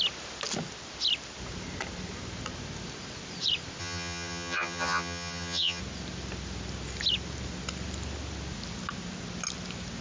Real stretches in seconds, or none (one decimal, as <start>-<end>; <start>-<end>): 0.0-3.8; 5.8-10.0